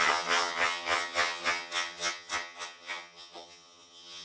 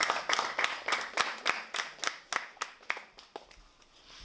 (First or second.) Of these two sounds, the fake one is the first